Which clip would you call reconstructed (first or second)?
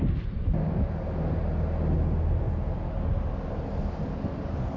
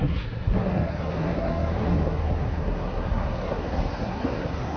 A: second